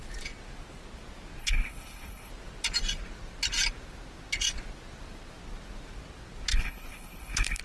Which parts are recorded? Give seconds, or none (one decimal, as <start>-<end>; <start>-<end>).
0.0-1.4; 2.3-6.5